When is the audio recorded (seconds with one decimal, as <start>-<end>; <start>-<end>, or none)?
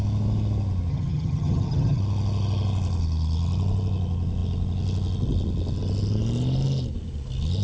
0.0-0.9; 2.0-7.6